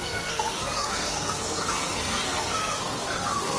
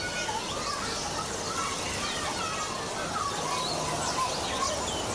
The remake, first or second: first